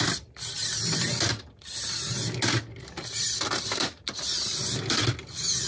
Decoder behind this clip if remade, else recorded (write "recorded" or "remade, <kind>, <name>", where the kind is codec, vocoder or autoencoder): recorded